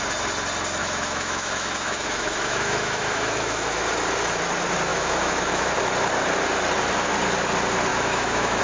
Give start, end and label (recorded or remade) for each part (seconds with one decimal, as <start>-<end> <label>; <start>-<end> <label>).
0.0-0.8 recorded; 0.8-3.8 remade; 3.8-4.9 recorded; 4.9-5.7 remade; 5.7-7.9 recorded; 7.9-8.6 remade